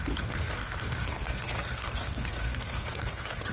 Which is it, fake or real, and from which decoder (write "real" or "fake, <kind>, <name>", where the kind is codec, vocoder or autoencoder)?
fake, codec, SNAC